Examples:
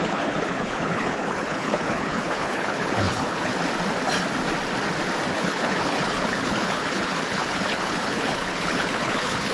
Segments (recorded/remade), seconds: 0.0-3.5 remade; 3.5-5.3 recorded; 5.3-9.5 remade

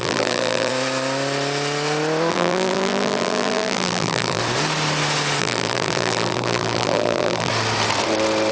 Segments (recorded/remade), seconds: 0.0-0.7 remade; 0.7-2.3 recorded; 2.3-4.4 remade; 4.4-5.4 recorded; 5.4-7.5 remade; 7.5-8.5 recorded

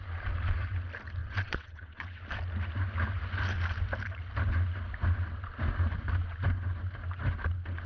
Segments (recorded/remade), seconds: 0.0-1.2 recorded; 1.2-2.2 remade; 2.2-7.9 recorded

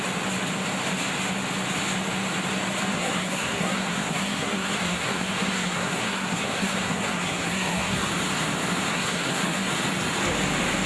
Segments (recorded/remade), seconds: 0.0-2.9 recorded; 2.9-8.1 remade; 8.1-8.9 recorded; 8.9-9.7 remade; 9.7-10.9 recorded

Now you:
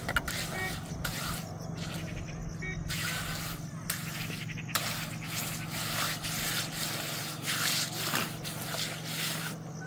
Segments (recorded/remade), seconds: 0.0-9.9 recorded